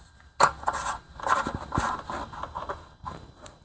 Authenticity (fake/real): real